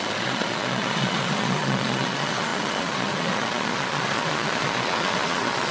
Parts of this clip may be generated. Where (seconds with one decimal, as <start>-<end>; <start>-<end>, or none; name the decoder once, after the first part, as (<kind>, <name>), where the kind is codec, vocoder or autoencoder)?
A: 0.0-5.7 (vocoder, Vocos)